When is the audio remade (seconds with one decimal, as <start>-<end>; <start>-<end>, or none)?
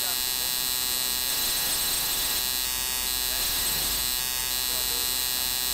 1.3-2.4; 3.4-4.0